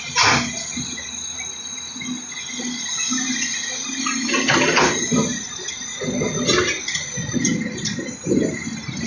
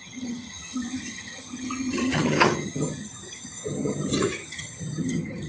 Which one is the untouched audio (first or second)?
first